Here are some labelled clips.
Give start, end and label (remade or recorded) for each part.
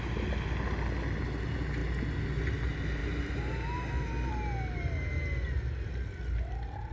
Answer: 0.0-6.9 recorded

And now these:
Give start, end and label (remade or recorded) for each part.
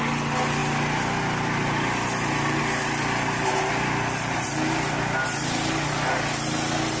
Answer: 0.0-7.0 recorded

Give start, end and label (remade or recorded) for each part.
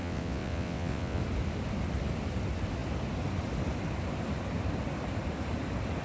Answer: 0.0-1.2 remade; 1.2-6.0 recorded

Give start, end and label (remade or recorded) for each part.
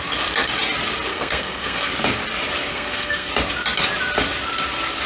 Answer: 0.0-1.1 recorded; 1.1-1.9 remade; 1.9-2.7 recorded; 2.7-3.3 remade; 3.3-5.1 recorded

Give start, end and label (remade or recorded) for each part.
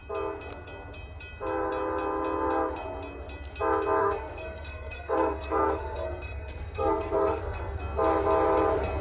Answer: 0.0-4.0 recorded; 4.0-7.8 remade; 7.8-9.0 recorded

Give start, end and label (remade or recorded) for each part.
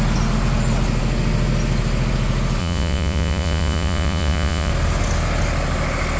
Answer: 0.0-2.6 recorded; 2.6-4.7 remade; 4.7-6.2 recorded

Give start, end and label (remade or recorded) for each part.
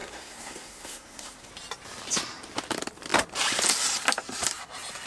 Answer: 0.0-1.5 remade; 1.5-5.1 recorded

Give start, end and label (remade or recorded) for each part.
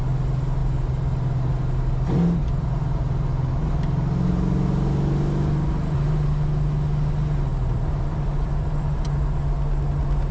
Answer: 0.0-7.5 recorded; 7.5-9.4 remade; 9.4-10.3 recorded